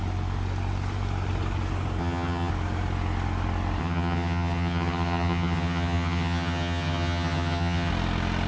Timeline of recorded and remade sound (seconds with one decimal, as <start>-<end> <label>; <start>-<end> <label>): 0.0-2.0 recorded; 2.0-2.5 remade; 2.5-3.8 recorded; 3.8-7.9 remade; 7.9-8.5 recorded